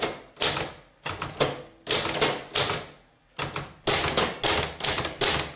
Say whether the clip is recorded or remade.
recorded